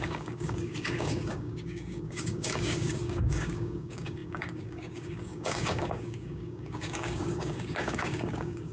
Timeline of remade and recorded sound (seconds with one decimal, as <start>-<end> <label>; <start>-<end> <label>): 0.0-8.7 remade